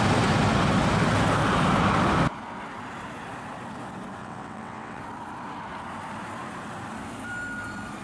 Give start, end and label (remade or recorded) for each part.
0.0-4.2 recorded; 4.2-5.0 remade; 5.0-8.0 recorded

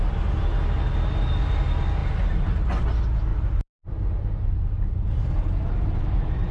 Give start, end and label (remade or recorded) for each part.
0.0-2.0 recorded; 2.0-2.8 remade; 2.8-3.3 recorded; 3.3-6.5 remade

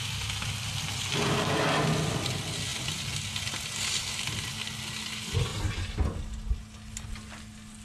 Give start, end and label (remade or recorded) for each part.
0.0-7.8 recorded

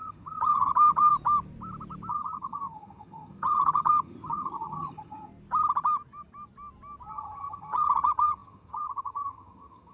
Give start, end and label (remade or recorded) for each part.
0.0-1.1 remade; 1.1-2.1 recorded; 2.1-5.3 remade; 5.3-7.1 recorded; 7.1-9.9 remade

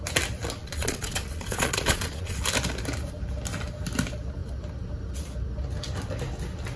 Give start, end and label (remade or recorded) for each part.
0.0-0.6 recorded; 0.6-2.4 remade; 2.4-6.8 recorded

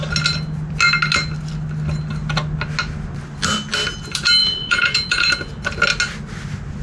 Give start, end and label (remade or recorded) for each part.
0.0-4.4 recorded; 4.4-5.3 remade; 5.3-6.8 recorded

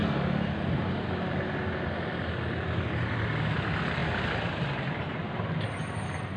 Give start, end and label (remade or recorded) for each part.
0.0-6.4 recorded

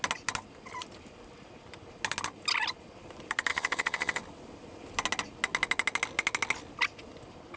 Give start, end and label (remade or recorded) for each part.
0.0-3.5 recorded; 3.5-4.2 remade; 4.2-7.6 recorded